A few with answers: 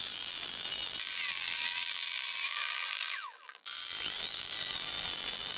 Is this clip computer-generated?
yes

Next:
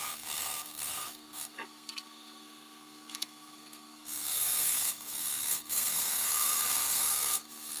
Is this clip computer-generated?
yes